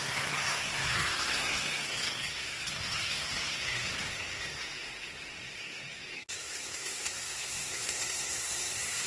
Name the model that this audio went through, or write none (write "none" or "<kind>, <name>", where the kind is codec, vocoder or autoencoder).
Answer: codec, SNAC